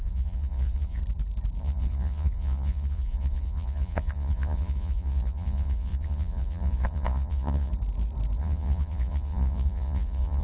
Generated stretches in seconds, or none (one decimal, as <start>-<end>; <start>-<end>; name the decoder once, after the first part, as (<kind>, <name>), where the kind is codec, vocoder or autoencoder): 0.0-1.0 (vocoder, Vocos); 1.6-7.7; 8.4-10.4